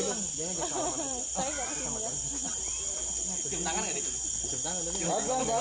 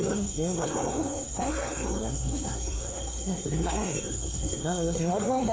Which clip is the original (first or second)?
first